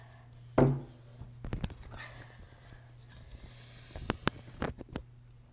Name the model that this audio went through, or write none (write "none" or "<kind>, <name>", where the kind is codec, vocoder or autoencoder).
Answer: none